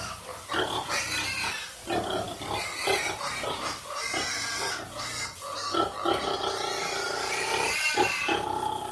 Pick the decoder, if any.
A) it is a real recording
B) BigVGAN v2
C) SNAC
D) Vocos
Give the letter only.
A